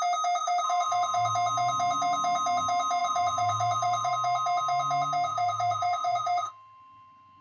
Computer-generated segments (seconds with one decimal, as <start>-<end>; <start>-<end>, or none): 0.4-1.3; 3.0-4.1; 5.3-6.5